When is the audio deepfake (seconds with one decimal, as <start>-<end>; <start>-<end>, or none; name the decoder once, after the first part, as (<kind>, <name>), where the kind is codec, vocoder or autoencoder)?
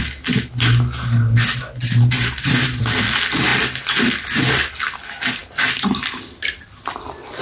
1.8-2.8 (vocoder, BigVGAN v2)